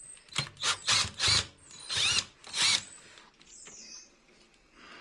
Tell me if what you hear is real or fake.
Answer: real